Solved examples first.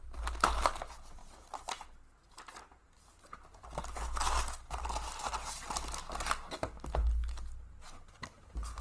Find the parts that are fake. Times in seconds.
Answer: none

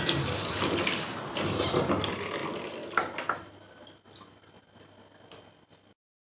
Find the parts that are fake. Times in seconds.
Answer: none

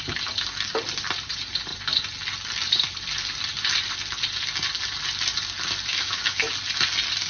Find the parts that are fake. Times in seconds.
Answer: 5.9-6.5 (autoencoder, DAC-VAE)

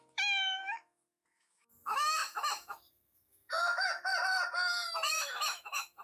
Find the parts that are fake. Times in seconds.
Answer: 0.0-4.1 (autoencoder, DAC-VAE); 5.1-6.0

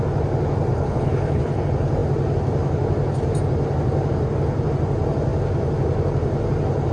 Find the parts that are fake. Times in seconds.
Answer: 0.7-1.6 (codec, HILCodec)